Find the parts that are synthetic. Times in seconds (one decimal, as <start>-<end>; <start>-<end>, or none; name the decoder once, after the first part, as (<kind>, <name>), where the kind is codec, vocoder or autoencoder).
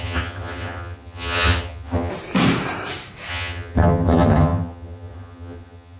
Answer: 0.0-2.1 (vocoder, HiFi-GAN); 3.3-6.0